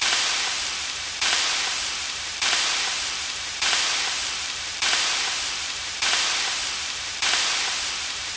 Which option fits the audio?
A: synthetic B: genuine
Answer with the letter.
A